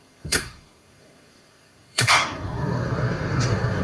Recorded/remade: remade